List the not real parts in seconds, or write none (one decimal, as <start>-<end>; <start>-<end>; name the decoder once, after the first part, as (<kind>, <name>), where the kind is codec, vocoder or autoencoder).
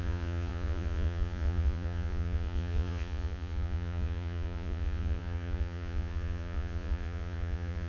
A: 0.0-7.9 (vocoder, Vocos)